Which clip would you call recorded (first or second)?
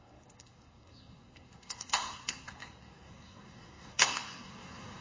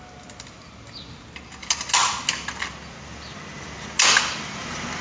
second